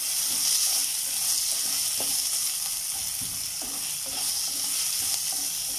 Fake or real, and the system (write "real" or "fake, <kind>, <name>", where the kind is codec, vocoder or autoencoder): real